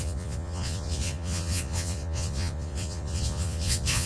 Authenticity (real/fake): fake